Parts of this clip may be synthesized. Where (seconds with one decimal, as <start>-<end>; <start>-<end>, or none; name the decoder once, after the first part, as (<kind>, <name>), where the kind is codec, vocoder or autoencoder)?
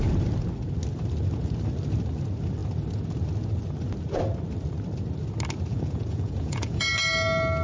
5.7-6.8 (vocoder, Vocos)